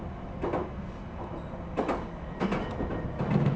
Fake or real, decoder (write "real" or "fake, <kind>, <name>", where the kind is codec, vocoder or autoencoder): real